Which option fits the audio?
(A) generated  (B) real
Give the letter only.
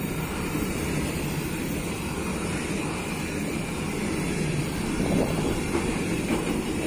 B